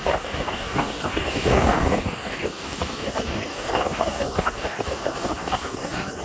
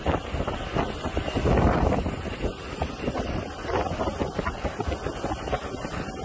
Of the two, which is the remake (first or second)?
first